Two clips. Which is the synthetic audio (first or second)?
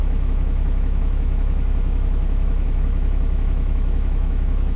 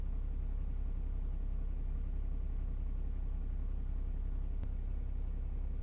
first